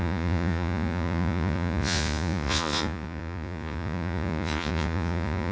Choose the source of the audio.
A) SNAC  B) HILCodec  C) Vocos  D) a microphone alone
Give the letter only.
C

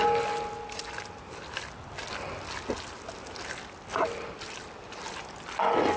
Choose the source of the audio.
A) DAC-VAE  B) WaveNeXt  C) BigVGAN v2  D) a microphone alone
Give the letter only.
D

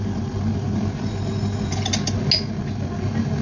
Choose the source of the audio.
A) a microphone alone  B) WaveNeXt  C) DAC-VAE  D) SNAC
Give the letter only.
A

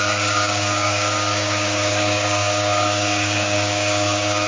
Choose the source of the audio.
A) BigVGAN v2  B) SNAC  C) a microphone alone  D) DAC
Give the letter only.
D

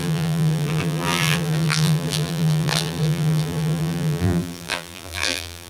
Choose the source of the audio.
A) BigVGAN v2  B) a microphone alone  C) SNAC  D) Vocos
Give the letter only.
A